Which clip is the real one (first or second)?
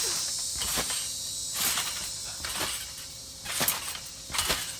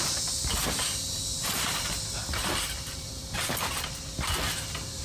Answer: first